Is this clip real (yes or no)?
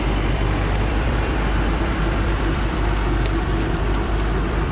no